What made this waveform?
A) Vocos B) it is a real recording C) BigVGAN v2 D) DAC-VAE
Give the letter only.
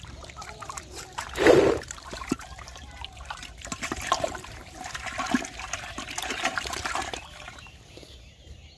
C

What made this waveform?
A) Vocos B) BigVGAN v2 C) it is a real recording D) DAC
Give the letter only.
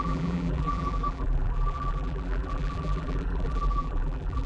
B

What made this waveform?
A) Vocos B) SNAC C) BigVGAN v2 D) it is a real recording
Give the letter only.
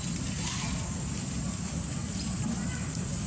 D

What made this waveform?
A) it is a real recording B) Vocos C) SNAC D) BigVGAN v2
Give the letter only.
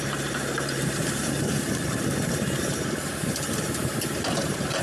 D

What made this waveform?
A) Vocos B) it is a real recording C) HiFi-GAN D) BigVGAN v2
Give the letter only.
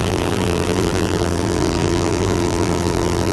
D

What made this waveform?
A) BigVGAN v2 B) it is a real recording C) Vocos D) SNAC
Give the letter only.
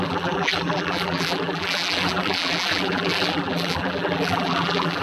A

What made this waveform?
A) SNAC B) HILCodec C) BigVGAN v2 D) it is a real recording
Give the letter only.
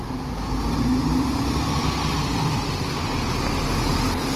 D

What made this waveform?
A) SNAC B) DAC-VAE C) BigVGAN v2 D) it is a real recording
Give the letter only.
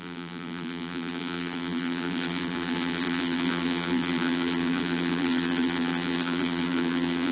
C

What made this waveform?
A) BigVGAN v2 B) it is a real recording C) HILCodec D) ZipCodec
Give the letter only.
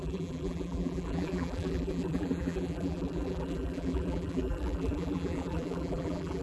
A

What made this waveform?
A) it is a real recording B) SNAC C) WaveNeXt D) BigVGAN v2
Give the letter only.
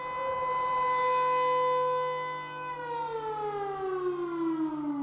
A